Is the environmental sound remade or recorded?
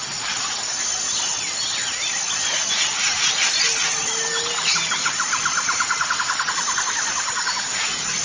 recorded